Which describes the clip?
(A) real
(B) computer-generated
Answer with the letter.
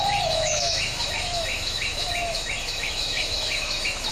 B